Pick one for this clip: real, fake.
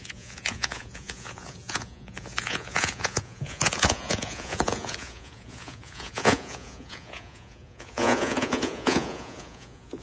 fake